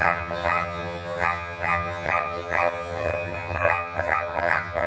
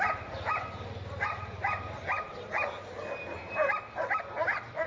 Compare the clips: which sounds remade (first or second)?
first